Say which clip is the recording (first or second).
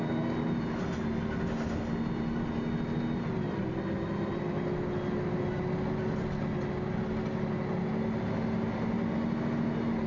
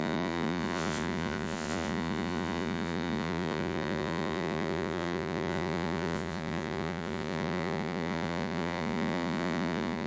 first